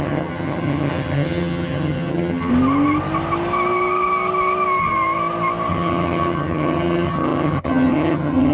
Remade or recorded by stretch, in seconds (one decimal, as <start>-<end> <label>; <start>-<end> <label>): 0.0-2.5 remade; 2.5-5.7 recorded; 5.7-8.5 remade